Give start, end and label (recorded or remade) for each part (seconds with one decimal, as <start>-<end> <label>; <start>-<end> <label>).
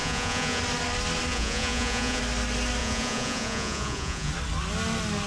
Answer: 0.0-0.6 remade; 0.6-1.3 recorded; 1.3-2.2 remade; 2.2-2.8 recorded; 2.8-4.3 remade; 4.3-5.3 recorded